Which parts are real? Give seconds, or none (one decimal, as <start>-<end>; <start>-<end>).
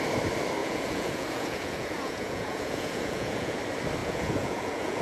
0.0-0.6; 3.6-4.0